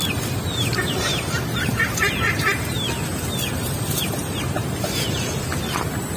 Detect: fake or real real